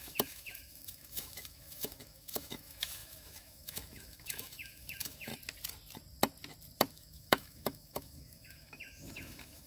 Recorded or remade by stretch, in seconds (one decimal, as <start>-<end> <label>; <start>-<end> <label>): 0.0-5.3 remade; 5.3-6.9 recorded; 6.9-9.7 remade